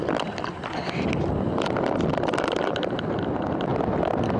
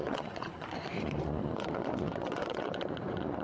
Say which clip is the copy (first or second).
second